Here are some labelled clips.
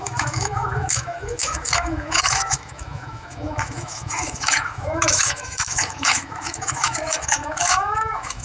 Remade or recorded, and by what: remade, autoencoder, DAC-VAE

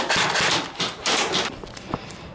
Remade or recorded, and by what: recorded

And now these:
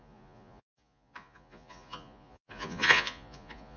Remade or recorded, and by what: remade, vocoder, Vocos